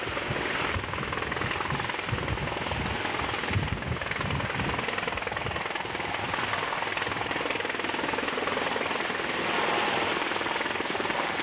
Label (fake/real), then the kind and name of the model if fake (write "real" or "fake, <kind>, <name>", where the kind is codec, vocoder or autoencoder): real